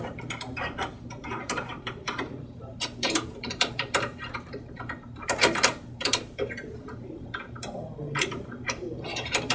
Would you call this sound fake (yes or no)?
yes